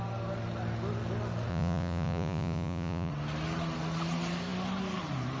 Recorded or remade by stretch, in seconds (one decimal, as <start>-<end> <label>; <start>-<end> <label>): 0.0-1.5 recorded; 1.5-3.1 remade; 3.1-5.4 recorded